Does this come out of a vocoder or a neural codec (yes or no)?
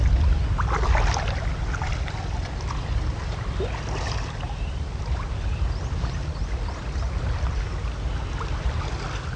no